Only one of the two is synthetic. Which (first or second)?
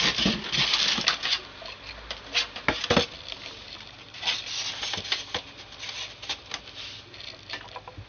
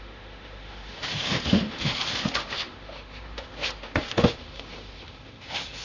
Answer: second